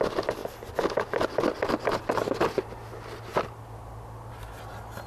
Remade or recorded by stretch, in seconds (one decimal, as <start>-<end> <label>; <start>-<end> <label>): 0.0-5.1 recorded